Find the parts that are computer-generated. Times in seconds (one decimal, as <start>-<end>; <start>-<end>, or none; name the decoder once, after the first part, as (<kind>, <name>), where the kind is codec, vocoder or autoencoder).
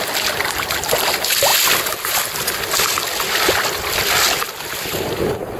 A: none